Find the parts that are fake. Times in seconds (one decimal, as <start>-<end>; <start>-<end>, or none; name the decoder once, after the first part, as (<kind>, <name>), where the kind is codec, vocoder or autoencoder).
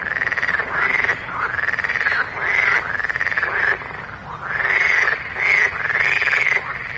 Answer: none